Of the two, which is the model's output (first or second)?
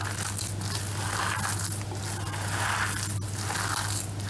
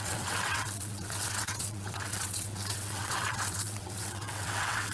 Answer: second